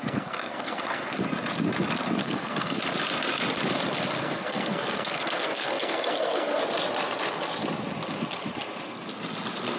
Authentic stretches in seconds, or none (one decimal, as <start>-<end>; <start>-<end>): 1.2-2.2; 2.8-4.2; 6.6-9.8